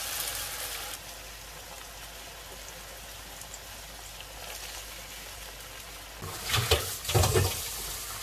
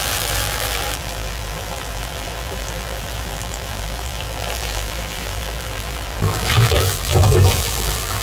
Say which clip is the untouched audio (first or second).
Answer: first